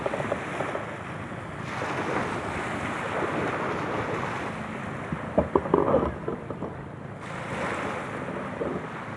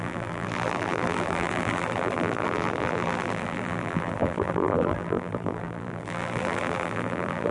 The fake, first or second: second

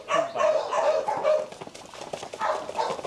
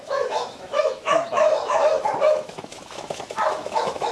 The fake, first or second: second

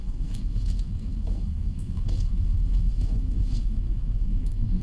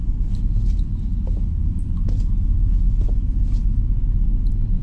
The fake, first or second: first